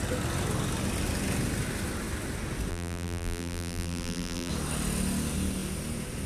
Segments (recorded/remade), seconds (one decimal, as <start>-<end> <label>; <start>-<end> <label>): 0.0-2.7 recorded; 2.7-4.5 remade; 4.5-6.3 recorded